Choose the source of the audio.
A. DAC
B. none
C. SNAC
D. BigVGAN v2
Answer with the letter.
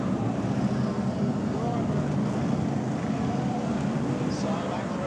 B